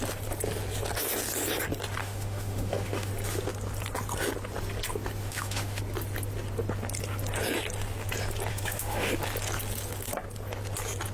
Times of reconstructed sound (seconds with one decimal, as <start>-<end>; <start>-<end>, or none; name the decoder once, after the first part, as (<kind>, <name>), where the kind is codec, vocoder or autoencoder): 2.0-3.1 (autoencoder, DAC-VAE); 5.2-5.8; 8.5-9.1